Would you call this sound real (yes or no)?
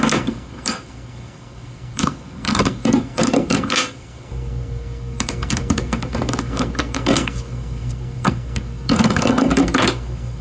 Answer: no